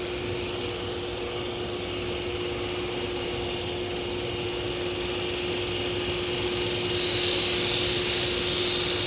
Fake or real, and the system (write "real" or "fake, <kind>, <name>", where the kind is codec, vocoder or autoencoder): real